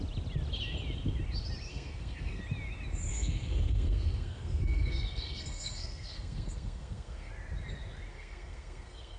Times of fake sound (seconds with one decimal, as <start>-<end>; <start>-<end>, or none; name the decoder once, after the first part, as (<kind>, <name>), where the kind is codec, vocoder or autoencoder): 1.7-2.4 (codec, SNAC); 3.1-7.3; 8.1-9.2